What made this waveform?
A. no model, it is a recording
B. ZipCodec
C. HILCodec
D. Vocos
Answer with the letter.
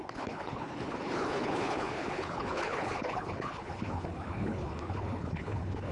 C